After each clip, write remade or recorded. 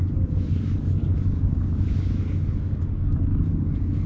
remade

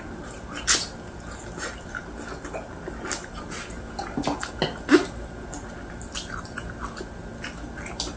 recorded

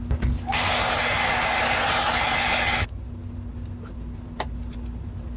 recorded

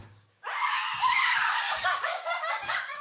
remade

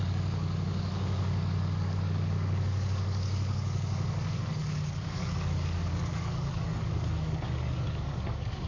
remade